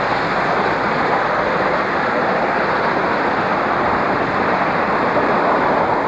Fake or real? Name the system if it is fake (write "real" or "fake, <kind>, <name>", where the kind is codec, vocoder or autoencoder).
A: real